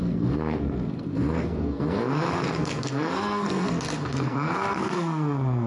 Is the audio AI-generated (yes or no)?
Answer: yes